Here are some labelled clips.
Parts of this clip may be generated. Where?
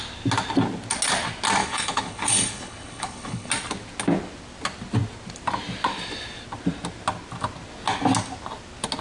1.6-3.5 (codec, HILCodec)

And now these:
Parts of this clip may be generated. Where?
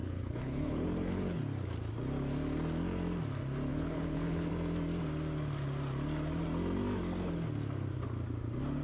0.0-1.4 (codec, HILCodec); 3.7-4.5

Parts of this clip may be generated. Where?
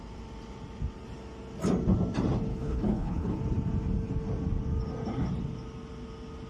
2.5-3.4 (codec, HILCodec)